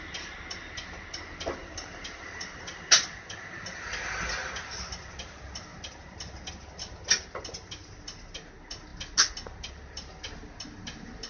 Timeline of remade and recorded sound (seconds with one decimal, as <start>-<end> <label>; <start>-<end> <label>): 0.0-1.6 recorded; 1.6-2.8 remade; 2.8-11.3 recorded